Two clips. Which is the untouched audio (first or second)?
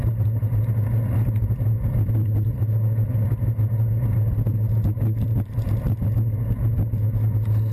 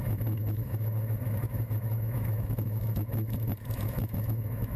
first